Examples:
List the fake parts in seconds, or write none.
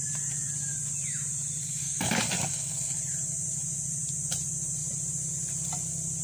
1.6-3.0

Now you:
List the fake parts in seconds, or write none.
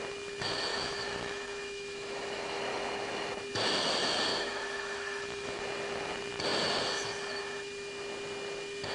0.7-2.6; 4.3-5.6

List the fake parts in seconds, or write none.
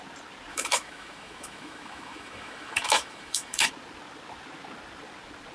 0.5-3.7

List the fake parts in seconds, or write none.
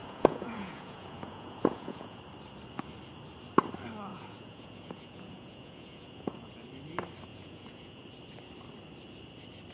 0.0-2.2; 4.1-6.5; 7.3-8.0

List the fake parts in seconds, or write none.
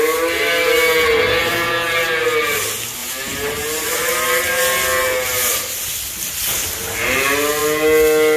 1.4-2.0; 3.0-4.6